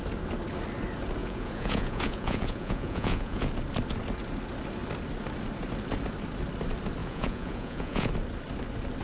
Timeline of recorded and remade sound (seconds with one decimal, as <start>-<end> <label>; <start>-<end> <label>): 0.0-1.2 recorded; 1.2-3.5 remade; 3.5-7.0 recorded; 7.0-8.1 remade; 8.1-9.0 recorded